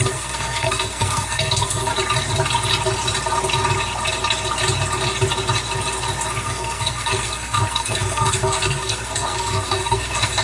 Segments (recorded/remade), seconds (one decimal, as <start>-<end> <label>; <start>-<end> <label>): 0.0-1.9 remade; 1.9-6.4 recorded; 6.4-10.4 remade